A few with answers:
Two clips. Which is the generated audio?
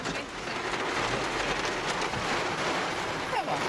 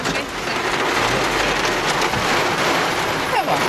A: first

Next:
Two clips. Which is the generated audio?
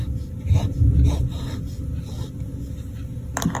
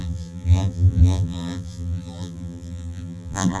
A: second